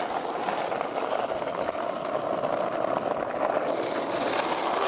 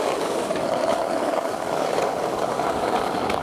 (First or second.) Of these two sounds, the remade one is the second